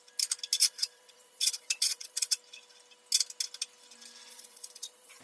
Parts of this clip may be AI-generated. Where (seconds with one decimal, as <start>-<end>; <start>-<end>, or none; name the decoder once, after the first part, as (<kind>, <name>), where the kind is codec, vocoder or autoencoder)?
0.6-2.4 (vocoder, Vocos); 4.3-5.2